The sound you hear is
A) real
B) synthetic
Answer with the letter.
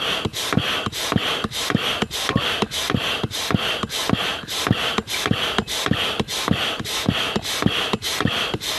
A